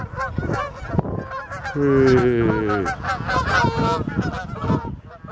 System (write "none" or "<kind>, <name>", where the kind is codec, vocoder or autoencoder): none